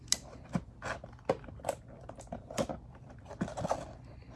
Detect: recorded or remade recorded